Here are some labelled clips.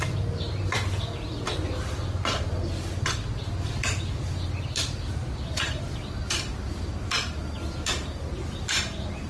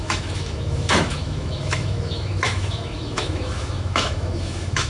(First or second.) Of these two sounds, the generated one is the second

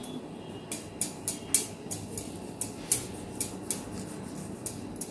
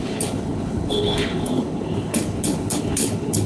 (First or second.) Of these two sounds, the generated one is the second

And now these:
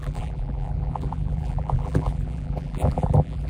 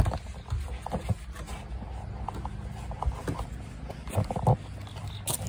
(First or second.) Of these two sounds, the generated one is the first